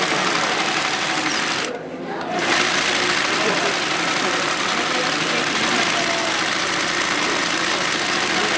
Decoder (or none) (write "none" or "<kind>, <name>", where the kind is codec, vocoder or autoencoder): none